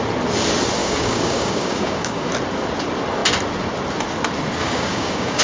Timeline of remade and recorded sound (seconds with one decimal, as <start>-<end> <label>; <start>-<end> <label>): 0.0-0.8 recorded; 0.8-2.3 remade; 2.3-4.6 recorded; 4.6-5.4 remade